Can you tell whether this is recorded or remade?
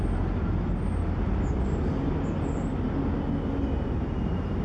recorded